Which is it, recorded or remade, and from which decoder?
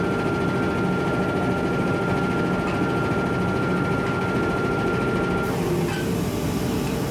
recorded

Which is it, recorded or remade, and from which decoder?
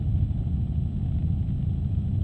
recorded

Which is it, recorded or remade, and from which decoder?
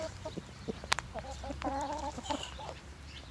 remade, vocoder, BigVGAN v2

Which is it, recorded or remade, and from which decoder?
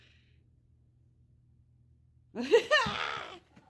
recorded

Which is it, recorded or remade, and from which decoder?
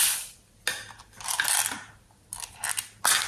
recorded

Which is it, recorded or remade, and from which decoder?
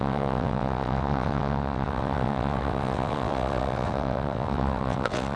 remade, vocoder, WaveNeXt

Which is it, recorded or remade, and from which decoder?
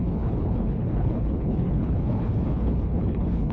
remade, codec, HILCodec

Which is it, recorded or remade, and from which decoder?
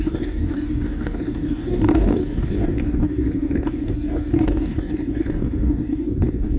remade, codec, DAC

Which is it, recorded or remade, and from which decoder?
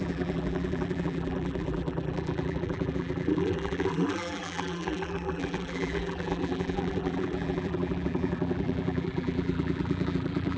remade, vocoder, BigVGAN v2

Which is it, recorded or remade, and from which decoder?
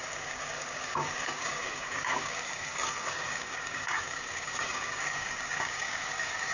remade, codec, DAC